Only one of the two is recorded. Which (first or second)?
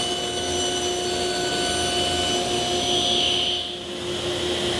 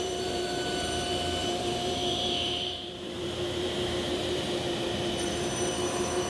first